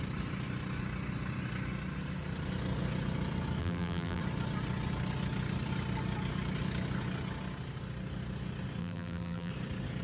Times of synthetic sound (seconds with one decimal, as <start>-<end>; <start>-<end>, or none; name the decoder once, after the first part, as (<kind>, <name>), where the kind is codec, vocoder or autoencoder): 3.6-4.2 (vocoder, BigVGAN v2); 8.8-9.5